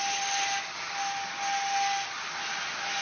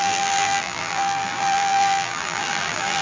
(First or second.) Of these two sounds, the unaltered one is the first